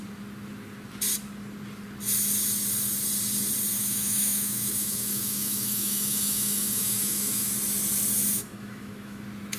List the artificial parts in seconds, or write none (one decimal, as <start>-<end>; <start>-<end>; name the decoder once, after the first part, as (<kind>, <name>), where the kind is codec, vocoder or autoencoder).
3.7-7.5 (autoencoder, DAC-VAE); 8.3-9.2